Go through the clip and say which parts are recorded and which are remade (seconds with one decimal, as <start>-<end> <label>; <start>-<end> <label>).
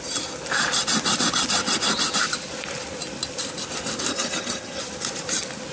0.0-4.1 recorded; 4.1-4.8 remade; 4.8-5.7 recorded